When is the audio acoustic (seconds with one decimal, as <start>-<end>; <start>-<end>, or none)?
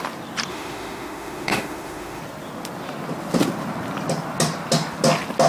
0.0-0.5; 2.2-5.5